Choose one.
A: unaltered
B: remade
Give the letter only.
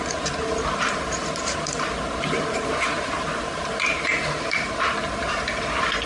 B